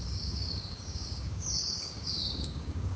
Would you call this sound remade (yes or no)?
yes